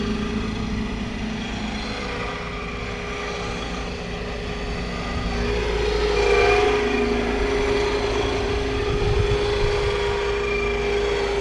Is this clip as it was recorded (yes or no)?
yes